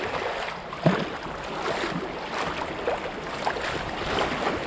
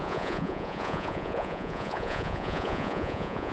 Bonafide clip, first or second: first